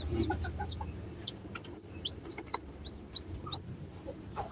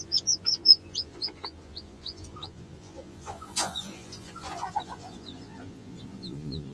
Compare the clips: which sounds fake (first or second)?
second